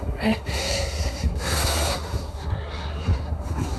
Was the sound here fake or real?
fake